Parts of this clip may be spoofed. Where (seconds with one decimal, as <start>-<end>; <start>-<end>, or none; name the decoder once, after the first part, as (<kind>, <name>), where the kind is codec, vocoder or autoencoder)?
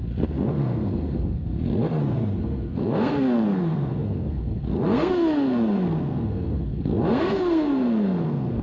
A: 0.0-8.6 (codec, SNAC)